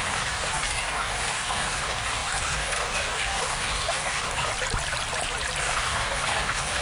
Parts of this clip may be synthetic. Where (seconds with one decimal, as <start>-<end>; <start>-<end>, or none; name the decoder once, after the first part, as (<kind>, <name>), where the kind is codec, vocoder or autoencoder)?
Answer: 0.0-4.5 (codec, DAC); 5.6-6.8